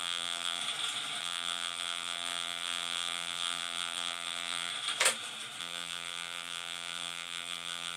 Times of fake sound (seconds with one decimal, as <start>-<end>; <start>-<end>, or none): 0.0-0.6; 1.2-4.7; 5.6-8.0